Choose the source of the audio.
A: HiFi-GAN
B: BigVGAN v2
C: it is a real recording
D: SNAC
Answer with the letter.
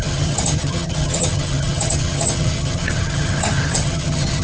A